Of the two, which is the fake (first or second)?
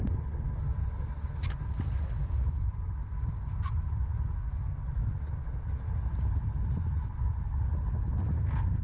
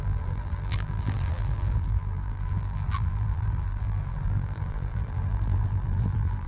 second